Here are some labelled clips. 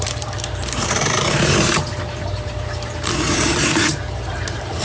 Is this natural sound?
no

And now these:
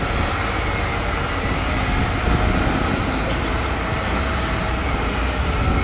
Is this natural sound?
yes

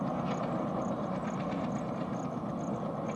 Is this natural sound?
yes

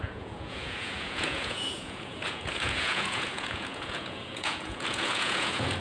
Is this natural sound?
no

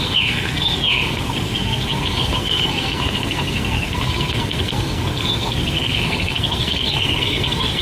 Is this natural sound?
no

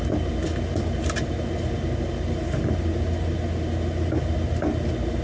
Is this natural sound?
yes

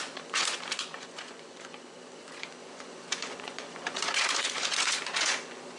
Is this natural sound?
no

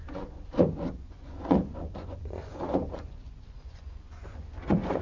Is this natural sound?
no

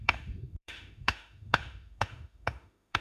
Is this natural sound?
no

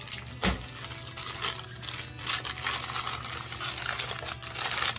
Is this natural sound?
yes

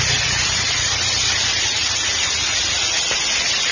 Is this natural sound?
yes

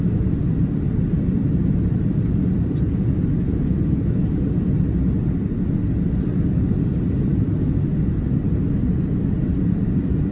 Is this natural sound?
yes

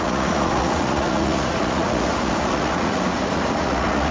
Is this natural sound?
no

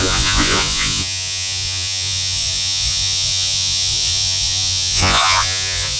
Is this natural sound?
no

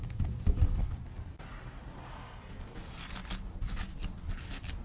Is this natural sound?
yes